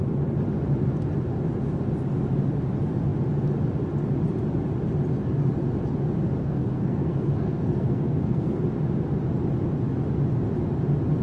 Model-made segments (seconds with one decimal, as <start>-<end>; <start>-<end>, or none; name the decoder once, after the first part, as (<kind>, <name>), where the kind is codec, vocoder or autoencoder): 6.4-8.6 (codec, SNAC)